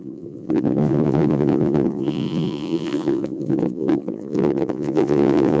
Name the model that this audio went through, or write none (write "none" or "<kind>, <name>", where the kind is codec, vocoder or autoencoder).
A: vocoder, Vocos